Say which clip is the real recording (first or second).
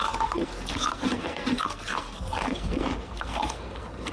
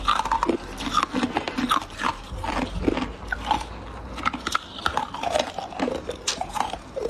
second